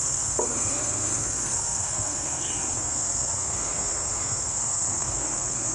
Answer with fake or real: fake